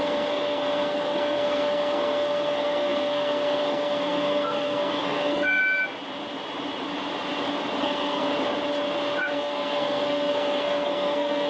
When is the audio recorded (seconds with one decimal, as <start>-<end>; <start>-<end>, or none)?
5.6-7.8; 8.3-9.2